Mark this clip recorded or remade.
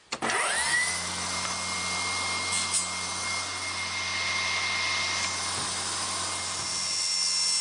recorded